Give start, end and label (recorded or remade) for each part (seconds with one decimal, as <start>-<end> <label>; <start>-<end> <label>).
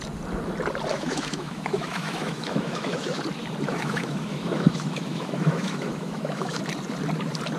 0.0-0.9 recorded; 0.9-3.2 remade; 3.2-3.7 recorded; 3.7-6.6 remade; 6.6-7.6 recorded